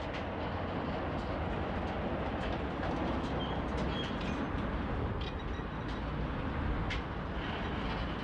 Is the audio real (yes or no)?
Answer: yes